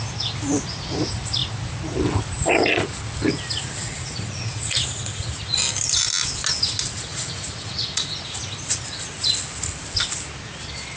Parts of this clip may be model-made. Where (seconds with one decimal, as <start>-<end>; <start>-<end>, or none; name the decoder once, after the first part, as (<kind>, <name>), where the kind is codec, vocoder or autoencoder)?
3.8-5.6 (vocoder, Vocos); 7.1-8.4